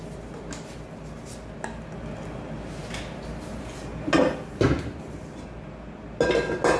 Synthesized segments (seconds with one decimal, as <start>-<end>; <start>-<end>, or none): none